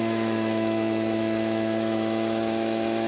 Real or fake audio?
fake